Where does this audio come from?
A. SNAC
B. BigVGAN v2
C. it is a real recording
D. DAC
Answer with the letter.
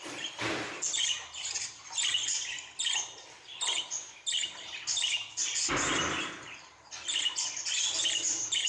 B